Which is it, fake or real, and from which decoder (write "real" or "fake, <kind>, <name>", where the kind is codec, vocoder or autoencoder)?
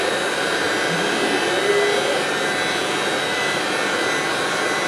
real